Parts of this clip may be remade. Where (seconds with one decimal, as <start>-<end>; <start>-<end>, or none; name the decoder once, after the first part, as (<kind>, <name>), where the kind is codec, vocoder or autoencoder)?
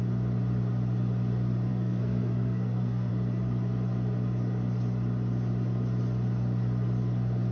1.7-3.1 (codec, SNAC)